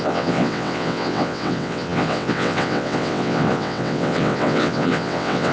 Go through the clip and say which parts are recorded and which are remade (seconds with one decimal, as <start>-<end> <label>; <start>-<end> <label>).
0.0-5.5 remade